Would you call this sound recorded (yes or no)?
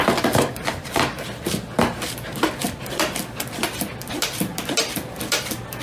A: yes